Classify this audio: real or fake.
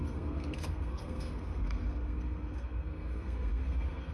fake